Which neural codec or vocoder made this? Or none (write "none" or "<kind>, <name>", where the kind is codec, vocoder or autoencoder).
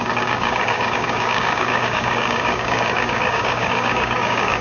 codec, DAC